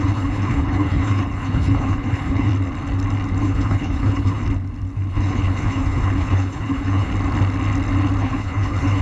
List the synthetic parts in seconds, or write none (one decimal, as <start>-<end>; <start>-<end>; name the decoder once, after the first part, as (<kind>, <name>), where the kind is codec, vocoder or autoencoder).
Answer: 0.0-2.5 (codec, HILCodec); 3.4-4.4; 5.1-7.1; 8.2-9.0